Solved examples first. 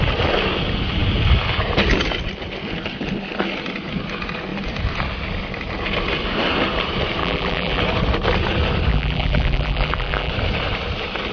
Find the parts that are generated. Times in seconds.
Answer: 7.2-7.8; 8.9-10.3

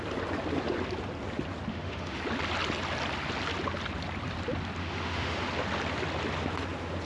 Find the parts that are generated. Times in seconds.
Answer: 1.7-2.2; 4.8-5.4

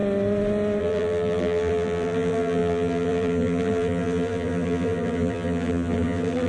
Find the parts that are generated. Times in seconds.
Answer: 0.8-6.5